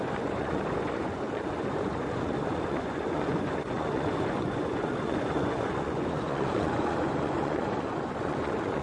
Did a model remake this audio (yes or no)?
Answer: yes